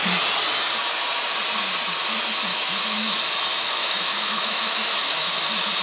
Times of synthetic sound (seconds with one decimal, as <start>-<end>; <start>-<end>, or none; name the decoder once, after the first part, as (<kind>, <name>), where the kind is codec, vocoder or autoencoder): 2.5-3.2 (autoencoder, DAC-VAE); 3.8-5.3